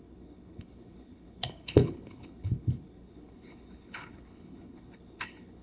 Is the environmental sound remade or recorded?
remade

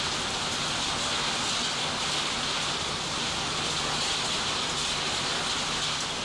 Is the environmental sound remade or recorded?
recorded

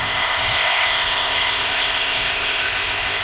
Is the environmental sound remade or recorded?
remade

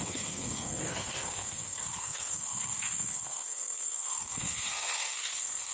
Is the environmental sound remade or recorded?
remade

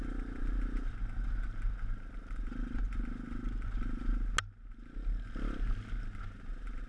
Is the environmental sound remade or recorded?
recorded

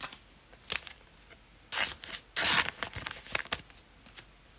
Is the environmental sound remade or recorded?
recorded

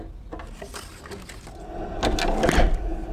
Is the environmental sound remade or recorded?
recorded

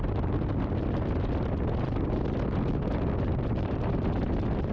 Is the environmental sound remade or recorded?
recorded